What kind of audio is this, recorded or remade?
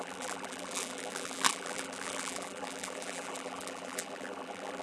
remade